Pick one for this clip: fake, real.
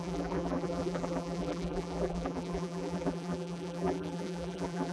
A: fake